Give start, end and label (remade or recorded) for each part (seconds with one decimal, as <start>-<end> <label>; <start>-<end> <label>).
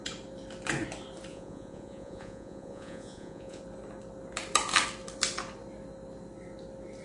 0.0-1.3 recorded; 1.3-3.6 remade; 3.6-7.0 recorded